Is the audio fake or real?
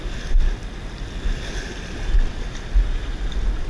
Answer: real